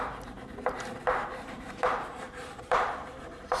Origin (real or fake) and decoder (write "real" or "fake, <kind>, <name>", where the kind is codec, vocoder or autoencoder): fake, vocoder, BigVGAN v2